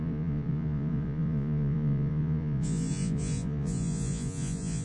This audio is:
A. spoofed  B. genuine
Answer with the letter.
A